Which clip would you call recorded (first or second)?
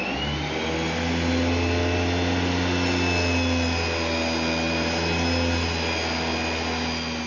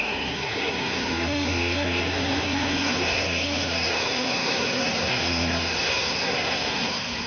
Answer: first